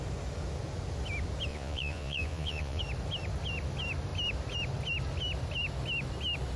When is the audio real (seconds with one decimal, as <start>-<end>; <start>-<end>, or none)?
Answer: 0.0-1.5; 2.8-6.6